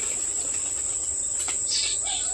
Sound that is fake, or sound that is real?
real